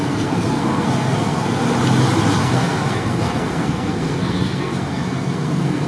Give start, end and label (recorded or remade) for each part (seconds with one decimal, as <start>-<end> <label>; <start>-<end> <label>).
0.0-1.6 remade; 1.6-2.4 recorded; 2.4-5.9 remade